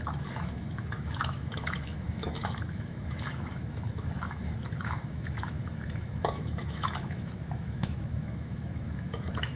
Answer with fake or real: fake